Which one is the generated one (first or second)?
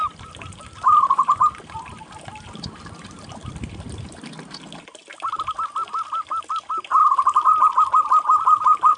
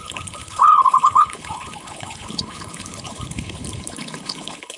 second